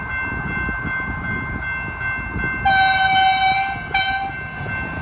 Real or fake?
real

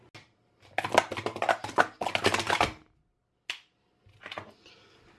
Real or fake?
real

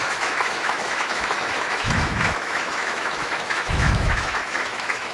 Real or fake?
fake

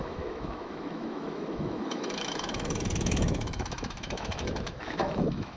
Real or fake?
fake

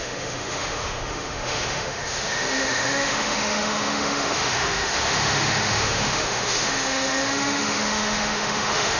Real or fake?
fake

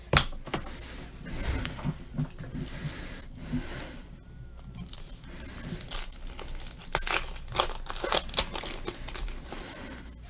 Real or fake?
real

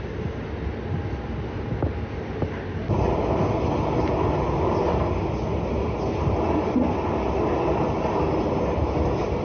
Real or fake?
real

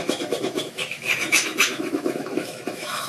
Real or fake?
fake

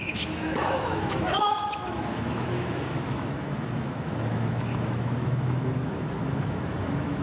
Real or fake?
fake